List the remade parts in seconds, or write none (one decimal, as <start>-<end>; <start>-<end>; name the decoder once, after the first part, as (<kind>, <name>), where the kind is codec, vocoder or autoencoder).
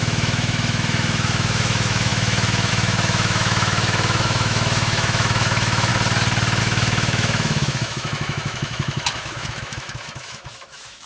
0.0-5.9 (autoencoder, DAC-VAE); 6.6-11.1